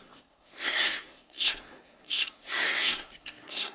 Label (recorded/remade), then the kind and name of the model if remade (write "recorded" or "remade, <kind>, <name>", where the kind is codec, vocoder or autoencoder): remade, codec, SNAC